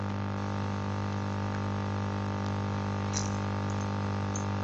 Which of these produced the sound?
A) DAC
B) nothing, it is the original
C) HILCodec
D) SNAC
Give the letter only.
B